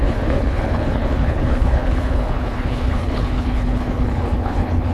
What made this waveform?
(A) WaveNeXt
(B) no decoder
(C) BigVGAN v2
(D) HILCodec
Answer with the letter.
D